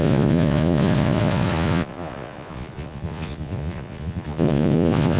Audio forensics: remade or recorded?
remade